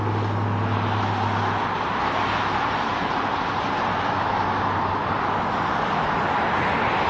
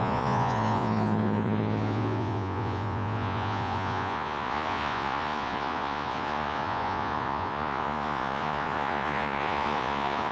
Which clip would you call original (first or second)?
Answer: first